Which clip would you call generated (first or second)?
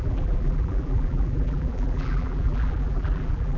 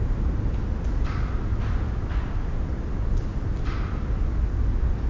first